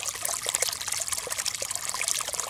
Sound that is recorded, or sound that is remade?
recorded